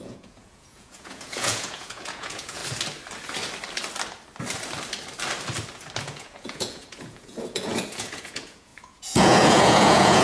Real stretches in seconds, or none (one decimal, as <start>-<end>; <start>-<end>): 2.6-6.0